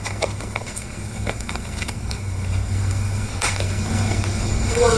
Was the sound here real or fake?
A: fake